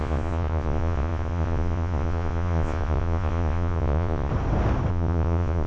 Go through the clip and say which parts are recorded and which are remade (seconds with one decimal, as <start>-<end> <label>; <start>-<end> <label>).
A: 0.0-4.3 remade; 4.3-4.9 recorded; 4.9-5.7 remade